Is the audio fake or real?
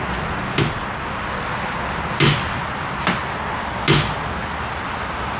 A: real